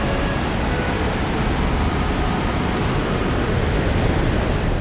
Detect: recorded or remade recorded